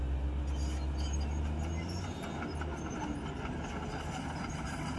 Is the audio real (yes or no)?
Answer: yes